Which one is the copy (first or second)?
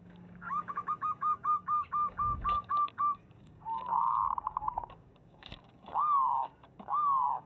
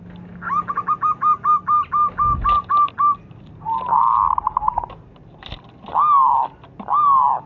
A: first